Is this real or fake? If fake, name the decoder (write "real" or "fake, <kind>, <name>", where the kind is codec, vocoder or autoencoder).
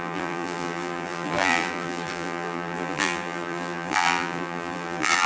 fake, vocoder, BigVGAN v2